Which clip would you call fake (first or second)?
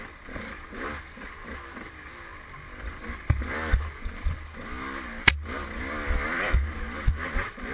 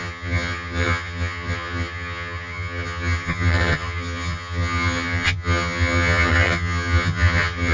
second